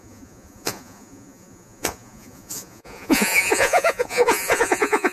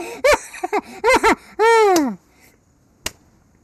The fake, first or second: first